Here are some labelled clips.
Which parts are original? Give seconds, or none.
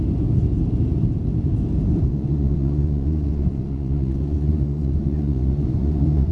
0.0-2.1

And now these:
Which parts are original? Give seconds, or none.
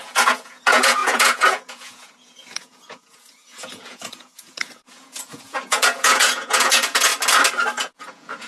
7.1-7.8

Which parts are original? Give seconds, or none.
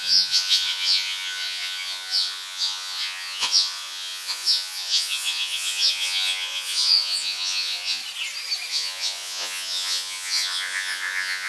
8.0-8.7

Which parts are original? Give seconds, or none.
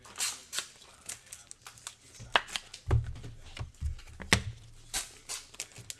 0.0-6.0